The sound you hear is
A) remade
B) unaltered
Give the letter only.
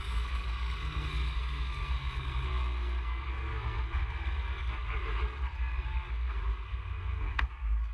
A